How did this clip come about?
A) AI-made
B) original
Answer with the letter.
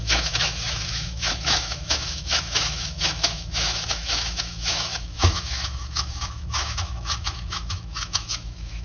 A